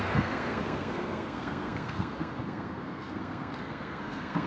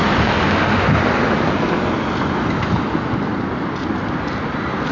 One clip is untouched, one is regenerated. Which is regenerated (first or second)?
first